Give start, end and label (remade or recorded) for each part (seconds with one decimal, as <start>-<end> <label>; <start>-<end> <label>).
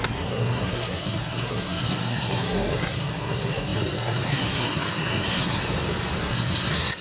0.0-5.6 remade; 5.6-6.2 recorded; 6.2-7.0 remade